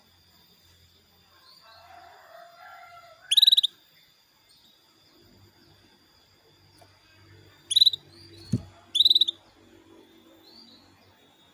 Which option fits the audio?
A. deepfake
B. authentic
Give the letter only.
B